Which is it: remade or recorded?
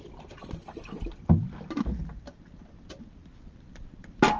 recorded